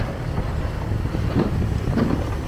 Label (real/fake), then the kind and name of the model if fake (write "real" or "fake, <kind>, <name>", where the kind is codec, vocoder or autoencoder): real